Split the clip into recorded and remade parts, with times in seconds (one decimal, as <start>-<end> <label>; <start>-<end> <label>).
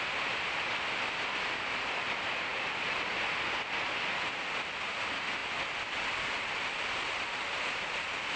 0.0-8.4 recorded